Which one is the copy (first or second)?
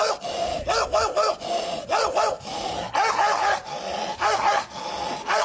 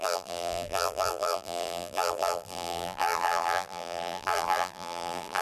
second